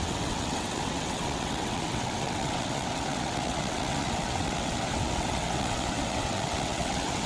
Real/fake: fake